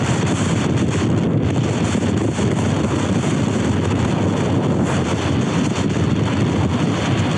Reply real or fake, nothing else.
real